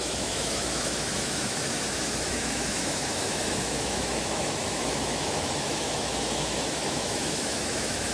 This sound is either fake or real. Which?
fake